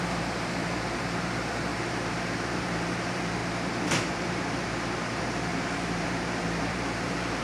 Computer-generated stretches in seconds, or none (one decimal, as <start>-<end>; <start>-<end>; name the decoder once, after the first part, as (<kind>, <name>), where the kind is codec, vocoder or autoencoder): 0.0-3.4 (vocoder, BigVGAN v2); 4.1-7.4